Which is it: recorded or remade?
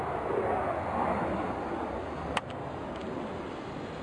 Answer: recorded